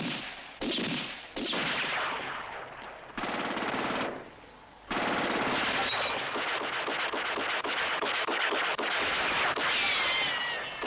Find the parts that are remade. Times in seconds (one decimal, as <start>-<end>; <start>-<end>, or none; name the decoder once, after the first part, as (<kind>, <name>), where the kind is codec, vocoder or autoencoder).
7.6-9.0 (codec, DAC)